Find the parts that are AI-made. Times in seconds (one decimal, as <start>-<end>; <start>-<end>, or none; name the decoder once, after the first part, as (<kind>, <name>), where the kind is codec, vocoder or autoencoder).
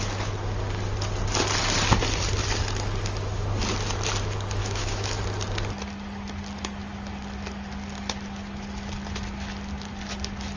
4.6-5.2 (autoencoder, DAC-VAE)